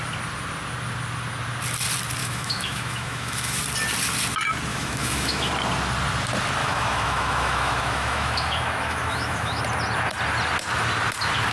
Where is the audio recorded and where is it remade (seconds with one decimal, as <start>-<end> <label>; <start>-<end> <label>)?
0.0-2.2 recorded; 2.2-3.6 remade; 3.6-4.7 recorded; 4.7-5.5 remade; 5.5-6.6 recorded; 6.6-9.6 remade; 9.6-11.5 recorded